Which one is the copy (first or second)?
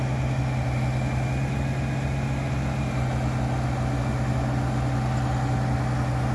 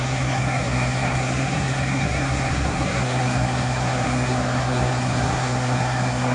second